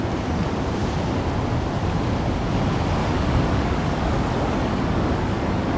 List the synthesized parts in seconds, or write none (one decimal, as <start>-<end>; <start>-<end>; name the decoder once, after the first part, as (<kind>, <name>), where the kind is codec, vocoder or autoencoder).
3.0-5.8 (codec, DAC)